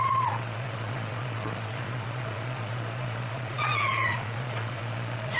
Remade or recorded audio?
remade